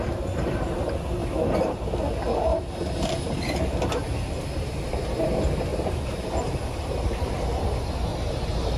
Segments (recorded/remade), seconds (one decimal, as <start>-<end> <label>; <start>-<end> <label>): 0.0-2.5 recorded; 2.5-3.6 remade; 3.6-5.7 recorded; 5.7-7.4 remade; 7.4-8.1 recorded; 8.1-8.8 remade